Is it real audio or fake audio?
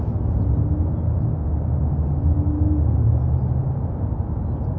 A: real